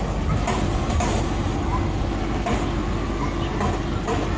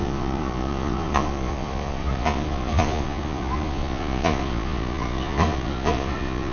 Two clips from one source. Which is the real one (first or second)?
first